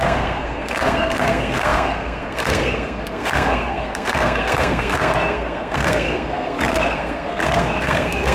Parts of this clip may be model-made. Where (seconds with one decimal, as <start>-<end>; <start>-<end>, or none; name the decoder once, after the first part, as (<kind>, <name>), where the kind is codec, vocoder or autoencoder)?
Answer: 0.0-8.3 (codec, SNAC)